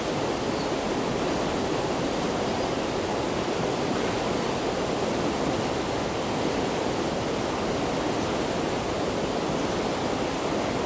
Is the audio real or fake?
real